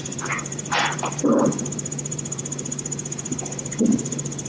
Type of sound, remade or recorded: remade